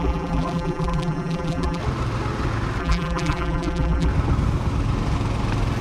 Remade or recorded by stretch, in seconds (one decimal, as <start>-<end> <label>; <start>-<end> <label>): 0.0-1.8 remade; 1.8-2.8 recorded; 2.8-4.1 remade; 4.1-5.8 recorded

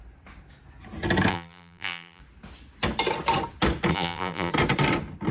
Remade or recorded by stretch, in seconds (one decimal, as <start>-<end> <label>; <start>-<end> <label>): 0.0-1.3 recorded; 1.3-2.2 remade; 2.2-3.9 recorded; 3.9-4.5 remade; 4.5-5.3 recorded